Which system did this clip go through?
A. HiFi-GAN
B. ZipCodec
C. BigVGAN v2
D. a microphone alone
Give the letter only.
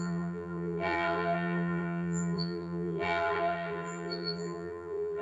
C